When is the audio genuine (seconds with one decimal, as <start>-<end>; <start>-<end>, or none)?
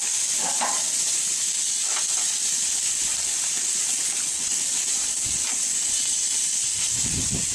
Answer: 0.0-7.5